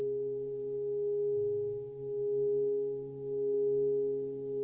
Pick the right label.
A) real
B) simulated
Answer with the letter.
A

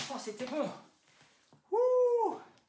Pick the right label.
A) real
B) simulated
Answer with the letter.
B